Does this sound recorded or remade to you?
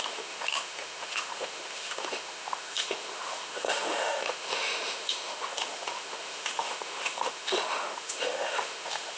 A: remade